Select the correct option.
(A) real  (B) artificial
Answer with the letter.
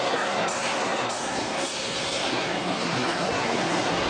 B